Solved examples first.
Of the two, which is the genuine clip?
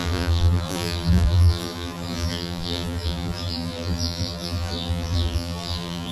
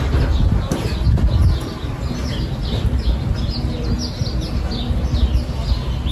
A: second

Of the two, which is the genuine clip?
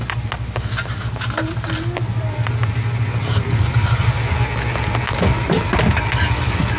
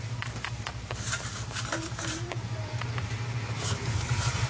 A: first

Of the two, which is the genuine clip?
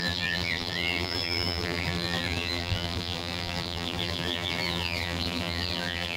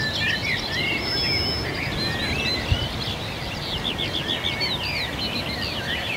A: second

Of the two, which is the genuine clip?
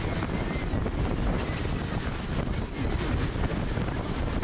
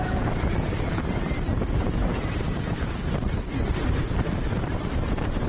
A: first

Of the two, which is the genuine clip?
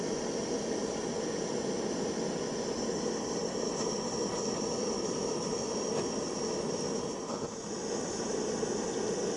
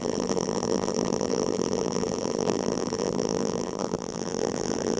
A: first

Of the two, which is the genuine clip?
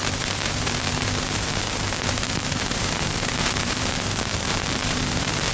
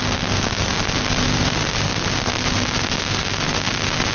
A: second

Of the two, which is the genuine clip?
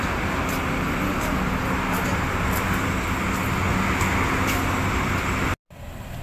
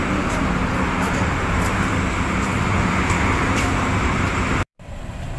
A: first